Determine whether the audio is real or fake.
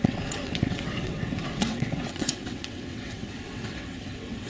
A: fake